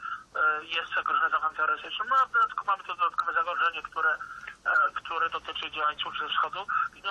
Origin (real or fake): real